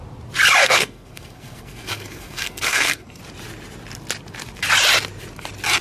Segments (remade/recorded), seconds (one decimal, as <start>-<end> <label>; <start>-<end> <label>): 0.0-0.6 recorded; 0.6-3.2 remade; 3.2-5.8 recorded